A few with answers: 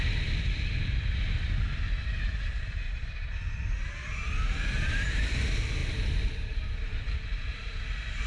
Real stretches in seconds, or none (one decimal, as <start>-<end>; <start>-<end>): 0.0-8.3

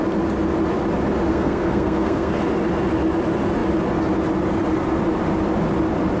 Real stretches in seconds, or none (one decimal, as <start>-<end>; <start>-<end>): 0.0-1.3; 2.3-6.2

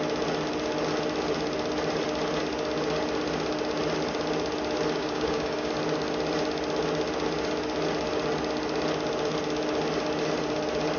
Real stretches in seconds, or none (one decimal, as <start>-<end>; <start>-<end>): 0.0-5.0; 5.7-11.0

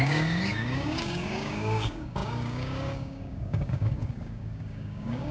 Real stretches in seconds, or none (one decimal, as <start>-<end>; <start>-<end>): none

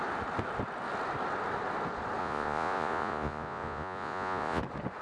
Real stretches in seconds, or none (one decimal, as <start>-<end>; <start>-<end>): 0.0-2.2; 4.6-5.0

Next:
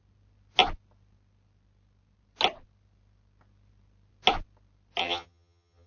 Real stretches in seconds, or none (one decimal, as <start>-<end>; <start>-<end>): 0.0-5.0

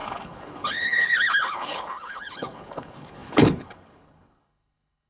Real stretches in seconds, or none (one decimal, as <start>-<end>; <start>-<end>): none

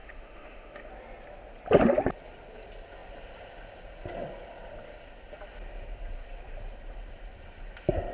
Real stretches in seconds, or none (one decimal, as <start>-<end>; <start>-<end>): 0.9-8.1